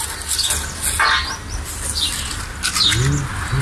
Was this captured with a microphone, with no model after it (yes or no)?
yes